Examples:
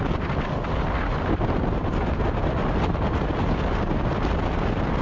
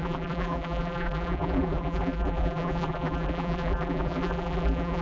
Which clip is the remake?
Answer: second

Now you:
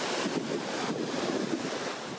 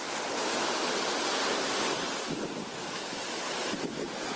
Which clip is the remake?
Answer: first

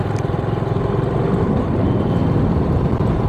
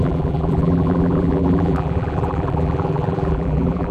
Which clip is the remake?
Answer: second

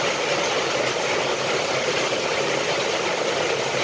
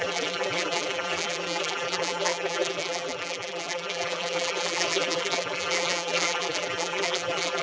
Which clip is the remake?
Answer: second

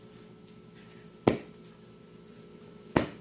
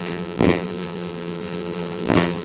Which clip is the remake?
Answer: second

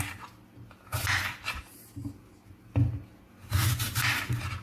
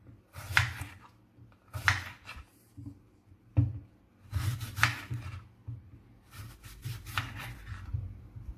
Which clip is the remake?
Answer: second